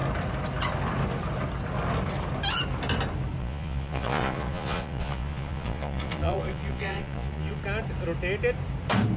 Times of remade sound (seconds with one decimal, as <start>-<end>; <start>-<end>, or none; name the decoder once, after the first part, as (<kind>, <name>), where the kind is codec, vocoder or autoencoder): 3.4-7.6 (vocoder, Vocos)

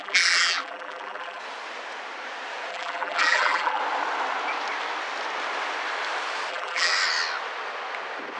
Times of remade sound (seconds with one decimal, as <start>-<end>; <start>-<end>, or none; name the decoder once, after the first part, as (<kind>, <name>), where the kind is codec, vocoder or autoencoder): 0.0-1.4 (vocoder, BigVGAN v2); 2.7-3.8; 6.5-6.9

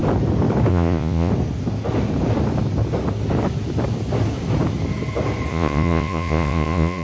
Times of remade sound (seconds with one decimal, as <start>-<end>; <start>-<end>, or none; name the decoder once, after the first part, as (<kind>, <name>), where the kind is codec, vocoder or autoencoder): 0.7-1.3 (vocoder, Vocos); 5.5-7.0

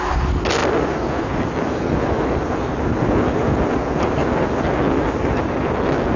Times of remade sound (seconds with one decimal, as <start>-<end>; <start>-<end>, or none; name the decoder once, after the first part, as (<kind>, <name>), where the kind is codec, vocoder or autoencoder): 0.6-3.1 (vocoder, BigVGAN v2)